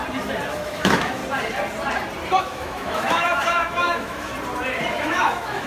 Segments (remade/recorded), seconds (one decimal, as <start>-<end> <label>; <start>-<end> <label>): 0.0-0.5 recorded; 0.5-1.2 remade; 1.2-2.4 recorded; 2.4-4.3 remade; 4.3-4.9 recorded; 4.9-5.7 remade